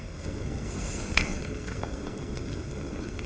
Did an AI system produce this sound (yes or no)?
yes